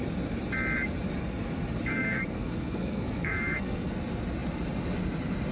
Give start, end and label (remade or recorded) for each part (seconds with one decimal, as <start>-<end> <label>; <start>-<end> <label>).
0.0-1.9 recorded; 1.9-3.9 remade; 3.9-5.5 recorded